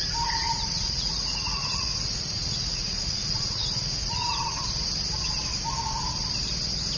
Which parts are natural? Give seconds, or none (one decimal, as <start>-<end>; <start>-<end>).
0.0-0.4; 4.6-7.0